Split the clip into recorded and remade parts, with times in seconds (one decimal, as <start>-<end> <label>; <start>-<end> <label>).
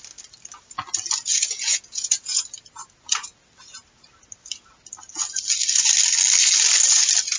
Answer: 0.0-1.3 recorded; 1.3-2.4 remade; 2.4-7.4 recorded